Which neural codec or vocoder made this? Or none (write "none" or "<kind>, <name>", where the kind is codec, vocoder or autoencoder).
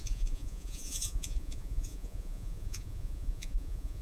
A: vocoder, Vocos